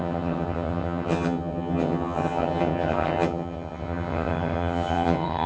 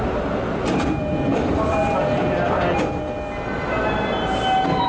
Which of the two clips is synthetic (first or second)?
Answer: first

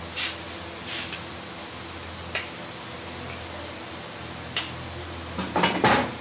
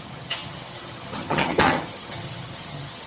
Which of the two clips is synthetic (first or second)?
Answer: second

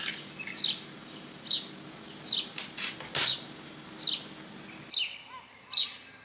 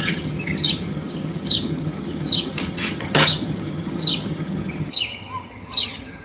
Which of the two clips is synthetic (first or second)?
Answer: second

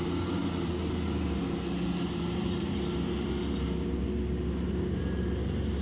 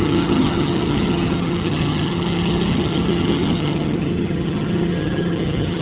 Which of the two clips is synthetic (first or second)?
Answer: second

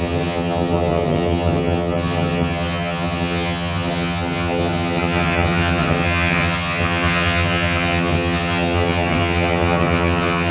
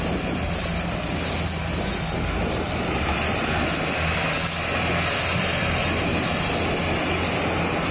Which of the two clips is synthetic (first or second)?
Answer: first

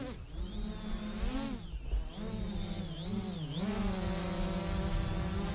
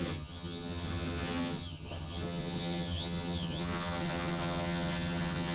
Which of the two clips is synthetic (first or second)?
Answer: second